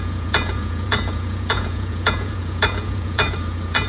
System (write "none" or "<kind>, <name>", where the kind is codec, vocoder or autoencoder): vocoder, Vocos